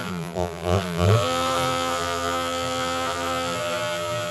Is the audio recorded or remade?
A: remade